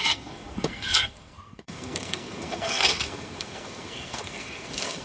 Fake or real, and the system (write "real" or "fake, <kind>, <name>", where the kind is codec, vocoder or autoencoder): fake, codec, SNAC